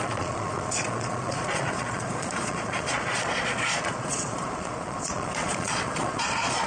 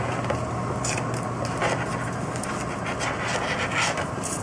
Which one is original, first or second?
second